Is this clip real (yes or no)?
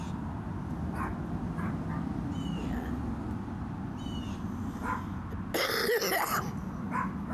yes